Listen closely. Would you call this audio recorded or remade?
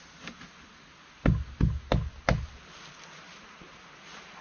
recorded